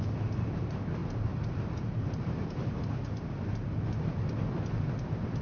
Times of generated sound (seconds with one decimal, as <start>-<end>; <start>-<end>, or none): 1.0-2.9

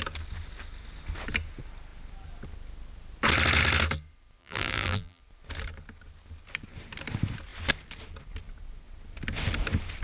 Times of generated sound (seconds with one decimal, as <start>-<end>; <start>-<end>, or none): 4.4-5.2

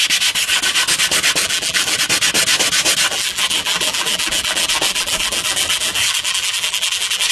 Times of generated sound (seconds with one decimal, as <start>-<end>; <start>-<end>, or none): 1.4-2.0; 3.1-7.3

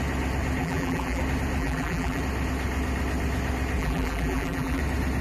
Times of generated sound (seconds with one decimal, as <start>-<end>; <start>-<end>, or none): 0.6-1.2; 1.6-2.2; 3.8-4.8

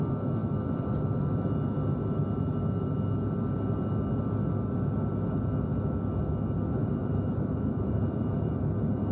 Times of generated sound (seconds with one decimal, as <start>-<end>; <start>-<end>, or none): 6.8-8.7